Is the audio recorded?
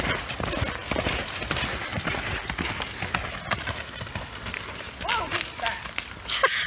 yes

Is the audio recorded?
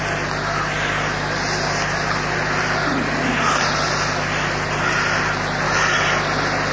yes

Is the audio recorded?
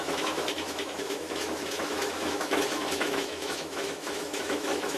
no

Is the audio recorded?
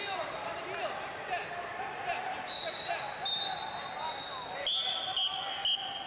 yes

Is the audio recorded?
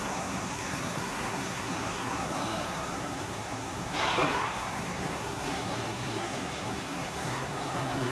no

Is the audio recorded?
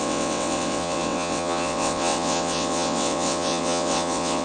no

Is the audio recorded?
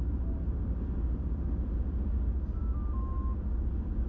yes